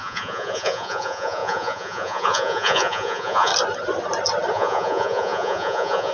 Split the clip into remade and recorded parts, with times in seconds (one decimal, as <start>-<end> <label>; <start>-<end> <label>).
0.0-3.5 remade; 3.5-4.5 recorded; 4.5-6.1 remade